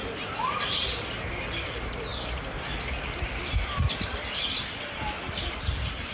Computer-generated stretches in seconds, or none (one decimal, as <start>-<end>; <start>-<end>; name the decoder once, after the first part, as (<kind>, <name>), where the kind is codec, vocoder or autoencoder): 0.0-2.1 (vocoder, BigVGAN v2); 5.6-6.1